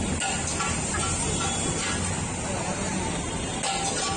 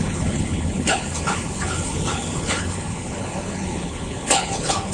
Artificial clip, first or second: second